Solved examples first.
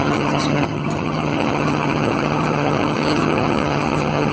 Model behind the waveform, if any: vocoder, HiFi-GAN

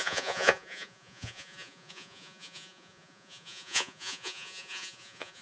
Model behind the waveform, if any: vocoder, Vocos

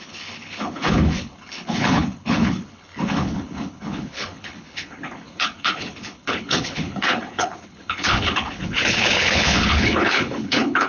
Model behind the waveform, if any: codec, HILCodec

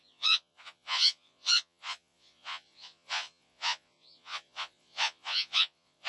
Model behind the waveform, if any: vocoder, Vocos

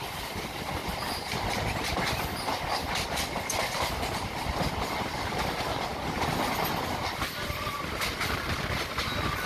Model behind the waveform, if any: none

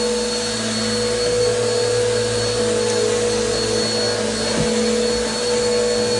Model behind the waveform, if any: none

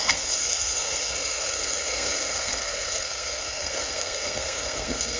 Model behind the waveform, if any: codec, SNAC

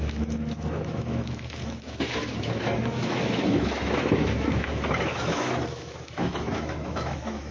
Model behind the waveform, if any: autoencoder, DAC-VAE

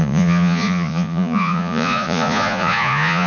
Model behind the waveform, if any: vocoder, Vocos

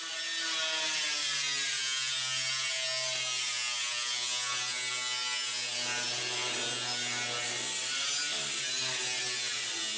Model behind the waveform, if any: none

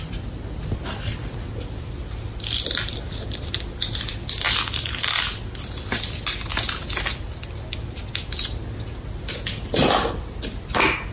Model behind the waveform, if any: none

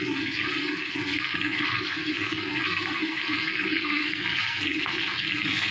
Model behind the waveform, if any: codec, SNAC